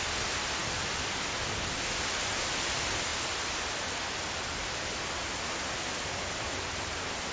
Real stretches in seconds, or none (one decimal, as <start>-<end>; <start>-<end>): 0.0-7.3